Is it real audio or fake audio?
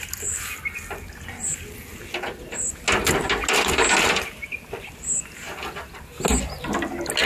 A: real